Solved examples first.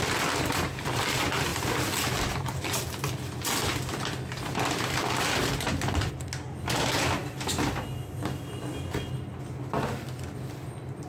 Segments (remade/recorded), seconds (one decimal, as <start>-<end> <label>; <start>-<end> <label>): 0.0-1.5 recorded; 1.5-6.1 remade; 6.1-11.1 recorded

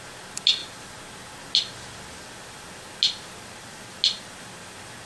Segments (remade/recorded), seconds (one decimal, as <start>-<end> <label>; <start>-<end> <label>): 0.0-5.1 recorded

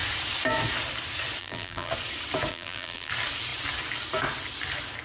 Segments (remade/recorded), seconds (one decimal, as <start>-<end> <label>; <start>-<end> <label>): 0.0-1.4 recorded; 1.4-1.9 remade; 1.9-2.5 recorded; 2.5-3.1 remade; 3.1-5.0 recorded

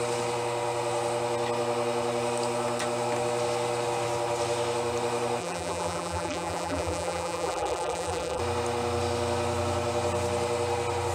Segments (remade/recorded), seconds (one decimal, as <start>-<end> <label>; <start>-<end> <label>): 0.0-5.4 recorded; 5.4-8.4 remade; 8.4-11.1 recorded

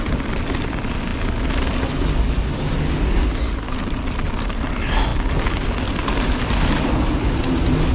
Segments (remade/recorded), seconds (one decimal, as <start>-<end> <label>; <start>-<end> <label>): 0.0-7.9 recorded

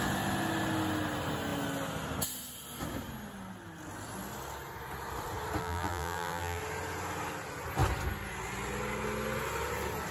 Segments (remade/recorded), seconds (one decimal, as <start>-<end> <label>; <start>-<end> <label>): 0.0-5.6 recorded; 5.6-6.6 remade; 6.6-10.1 recorded

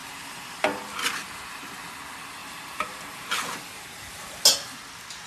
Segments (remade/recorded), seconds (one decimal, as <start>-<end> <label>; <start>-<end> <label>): 0.0-0.8 remade; 0.8-2.4 recorded; 2.4-3.3 remade; 3.3-5.3 recorded